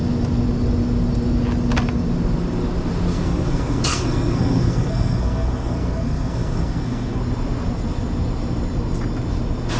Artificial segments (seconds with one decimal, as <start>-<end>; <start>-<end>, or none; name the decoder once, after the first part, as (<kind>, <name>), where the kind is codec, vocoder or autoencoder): 3.1-7.2 (codec, SNAC)